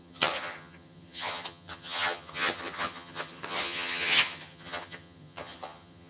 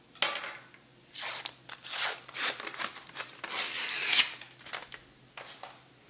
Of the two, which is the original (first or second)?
second